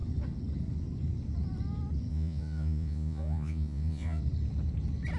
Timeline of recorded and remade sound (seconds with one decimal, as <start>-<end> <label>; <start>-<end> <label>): 0.0-2.1 recorded; 2.1-4.2 remade; 4.2-5.2 recorded